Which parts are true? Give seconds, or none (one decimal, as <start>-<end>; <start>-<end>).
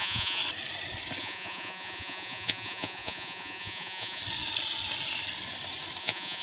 0.4-1.2; 4.2-6.0